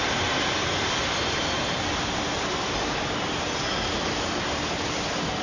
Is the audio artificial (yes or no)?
no